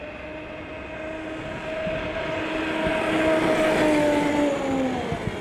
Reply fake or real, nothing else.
real